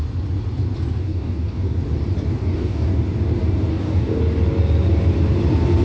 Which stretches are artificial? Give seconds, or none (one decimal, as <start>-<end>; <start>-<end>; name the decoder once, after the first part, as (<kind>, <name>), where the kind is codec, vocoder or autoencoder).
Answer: 1.0-1.8 (codec, DAC); 2.4-2.9; 3.7-4.2